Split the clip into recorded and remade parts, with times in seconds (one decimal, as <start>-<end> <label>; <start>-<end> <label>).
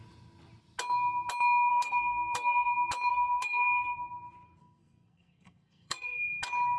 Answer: 0.0-1.7 recorded; 1.7-2.7 remade; 2.7-3.1 recorded; 3.1-4.1 remade; 4.1-4.6 recorded; 4.6-6.3 remade; 6.3-6.8 recorded